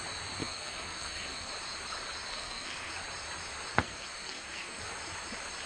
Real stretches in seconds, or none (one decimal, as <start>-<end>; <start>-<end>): 0.0-0.4; 1.5-2.3; 2.9-3.7; 4.8-5.7